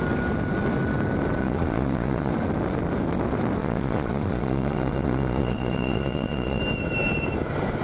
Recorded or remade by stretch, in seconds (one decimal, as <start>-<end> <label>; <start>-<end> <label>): 0.0-1.4 recorded; 1.4-2.3 remade; 2.3-3.6 recorded; 3.6-6.6 remade; 6.6-7.8 recorded